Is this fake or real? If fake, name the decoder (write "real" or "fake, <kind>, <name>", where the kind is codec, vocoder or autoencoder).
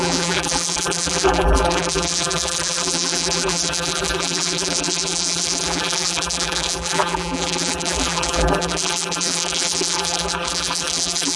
fake, vocoder, BigVGAN v2